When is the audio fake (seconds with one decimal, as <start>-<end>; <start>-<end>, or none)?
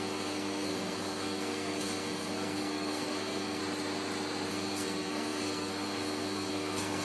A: 0.0-3.6; 4.5-7.0